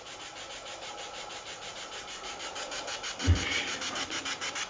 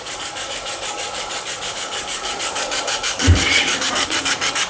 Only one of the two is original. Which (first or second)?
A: first